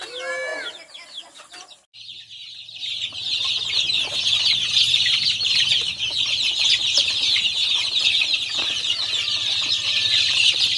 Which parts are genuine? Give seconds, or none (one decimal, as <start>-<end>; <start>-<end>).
0.0-2.4; 3.5-8.6